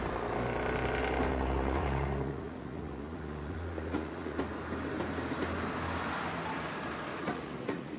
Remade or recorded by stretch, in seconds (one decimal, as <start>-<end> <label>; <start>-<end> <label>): 0.0-1.3 recorded; 1.3-4.4 remade; 4.4-7.1 recorded; 7.1-8.0 remade